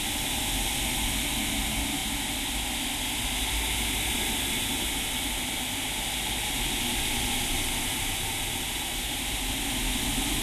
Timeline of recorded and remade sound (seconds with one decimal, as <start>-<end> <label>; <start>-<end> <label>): 0.0-10.4 recorded